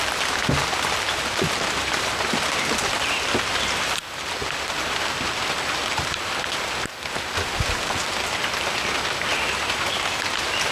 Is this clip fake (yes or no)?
no